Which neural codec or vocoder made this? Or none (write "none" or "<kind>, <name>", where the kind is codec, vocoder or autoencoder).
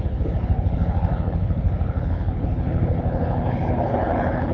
codec, HILCodec